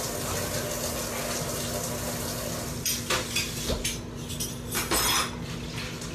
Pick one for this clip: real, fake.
real